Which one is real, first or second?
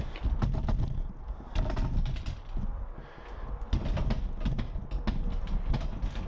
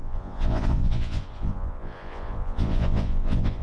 first